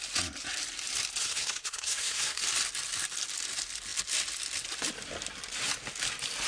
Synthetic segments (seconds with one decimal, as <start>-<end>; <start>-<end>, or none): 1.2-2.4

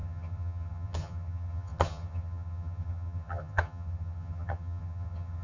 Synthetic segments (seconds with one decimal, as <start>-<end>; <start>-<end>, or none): 0.0-5.4

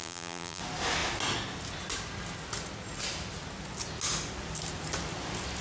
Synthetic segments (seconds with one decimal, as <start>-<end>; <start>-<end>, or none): 0.0-0.6

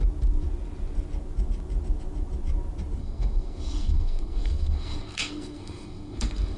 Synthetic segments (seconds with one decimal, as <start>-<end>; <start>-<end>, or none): 3.0-6.6